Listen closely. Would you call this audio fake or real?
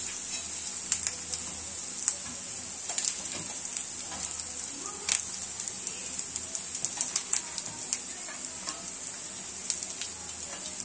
real